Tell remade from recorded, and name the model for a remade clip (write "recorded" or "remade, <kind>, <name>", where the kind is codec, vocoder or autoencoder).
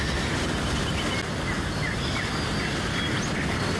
recorded